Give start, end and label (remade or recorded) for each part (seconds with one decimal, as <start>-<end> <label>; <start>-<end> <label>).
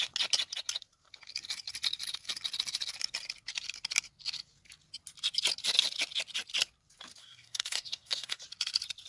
0.0-7.2 recorded; 7.2-8.4 remade; 8.4-9.1 recorded